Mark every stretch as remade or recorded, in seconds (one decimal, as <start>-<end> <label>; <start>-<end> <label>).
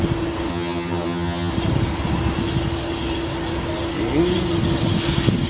0.0-0.5 recorded; 0.5-1.5 remade; 1.5-5.5 recorded